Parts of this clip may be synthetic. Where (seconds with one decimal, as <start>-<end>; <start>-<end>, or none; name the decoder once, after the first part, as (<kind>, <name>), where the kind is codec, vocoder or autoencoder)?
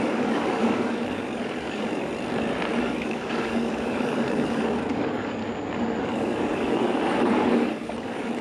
0.0-2.1 (codec, DAC); 2.8-5.4; 6.0-8.4